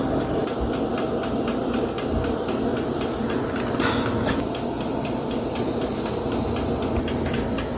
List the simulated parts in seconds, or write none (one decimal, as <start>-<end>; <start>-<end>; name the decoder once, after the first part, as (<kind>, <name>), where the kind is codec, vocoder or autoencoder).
none